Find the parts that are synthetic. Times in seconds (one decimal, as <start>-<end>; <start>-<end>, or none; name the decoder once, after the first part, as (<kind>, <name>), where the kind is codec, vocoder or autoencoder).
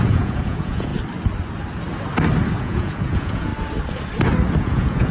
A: 0.0-0.9 (vocoder, Vocos); 2.6-3.5; 4.6-5.1